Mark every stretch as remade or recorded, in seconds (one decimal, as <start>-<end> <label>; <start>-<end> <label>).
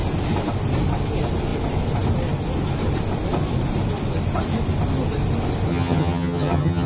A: 0.0-5.7 recorded; 5.7-6.9 remade